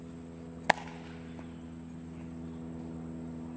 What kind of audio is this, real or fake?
real